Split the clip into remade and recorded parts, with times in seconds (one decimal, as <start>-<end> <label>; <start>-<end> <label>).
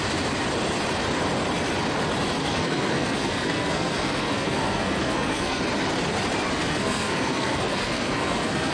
0.0-2.4 recorded; 2.4-5.6 remade; 5.6-6.6 recorded; 6.6-8.7 remade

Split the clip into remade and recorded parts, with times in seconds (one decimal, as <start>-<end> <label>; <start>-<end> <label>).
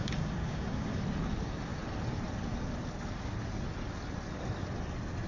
0.0-1.0 remade; 1.0-5.3 recorded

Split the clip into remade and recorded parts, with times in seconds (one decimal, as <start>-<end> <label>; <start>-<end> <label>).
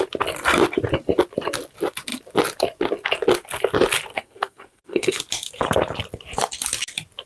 0.0-4.1 recorded; 4.1-5.2 remade; 5.2-7.3 recorded